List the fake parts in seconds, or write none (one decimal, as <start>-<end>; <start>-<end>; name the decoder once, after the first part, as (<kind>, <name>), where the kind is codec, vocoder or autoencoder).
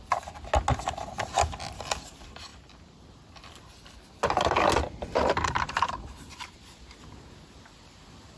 none